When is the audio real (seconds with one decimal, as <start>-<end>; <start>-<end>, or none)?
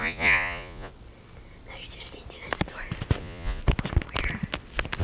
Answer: 0.9-3.2; 3.6-5.0